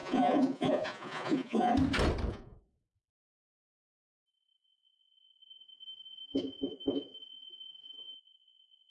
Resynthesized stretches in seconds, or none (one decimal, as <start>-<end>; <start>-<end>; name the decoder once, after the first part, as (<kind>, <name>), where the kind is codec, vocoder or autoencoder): 0.0-1.7 (vocoder, Vocos); 2.3-8.9